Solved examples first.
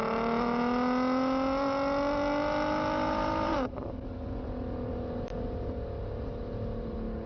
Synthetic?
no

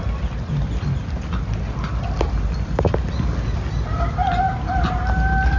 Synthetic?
no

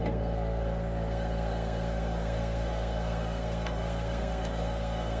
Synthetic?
yes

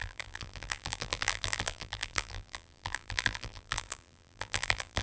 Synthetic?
yes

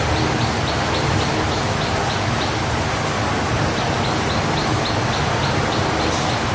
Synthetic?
no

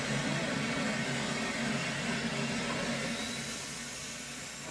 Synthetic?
no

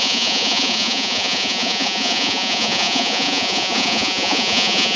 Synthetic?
yes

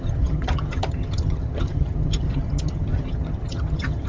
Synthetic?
yes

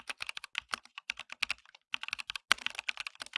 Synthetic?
no